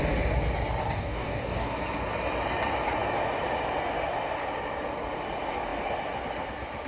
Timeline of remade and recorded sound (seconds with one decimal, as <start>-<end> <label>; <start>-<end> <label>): 0.0-0.8 recorded; 0.8-1.8 remade; 1.8-6.9 recorded